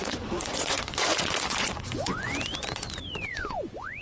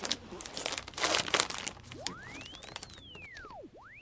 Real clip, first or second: second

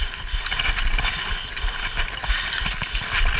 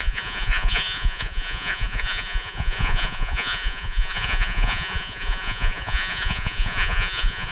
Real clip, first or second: first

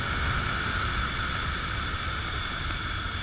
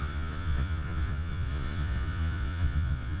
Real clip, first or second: first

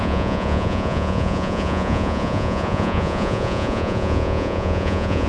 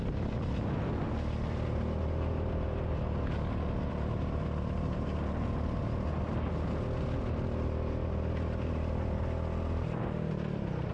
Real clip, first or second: second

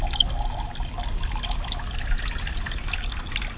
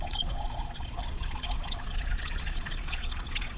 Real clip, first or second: first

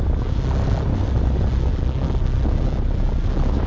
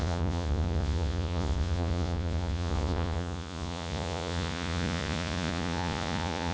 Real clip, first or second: first